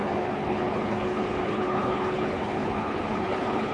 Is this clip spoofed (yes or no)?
yes